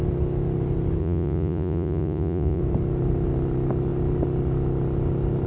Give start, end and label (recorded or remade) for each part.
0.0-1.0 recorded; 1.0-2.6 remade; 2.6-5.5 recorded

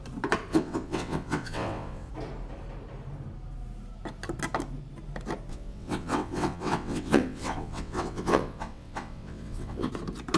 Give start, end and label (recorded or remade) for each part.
0.0-0.5 recorded; 0.5-2.1 remade; 2.1-5.5 recorded; 5.5-9.9 remade; 9.9-10.4 recorded

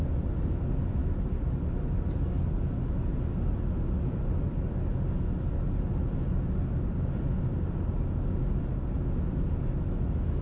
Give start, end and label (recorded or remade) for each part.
0.0-10.4 recorded